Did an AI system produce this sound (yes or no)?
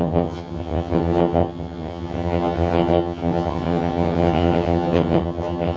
yes